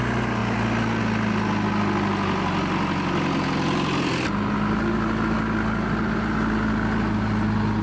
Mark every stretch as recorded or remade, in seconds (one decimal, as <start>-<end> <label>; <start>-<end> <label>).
0.0-7.8 recorded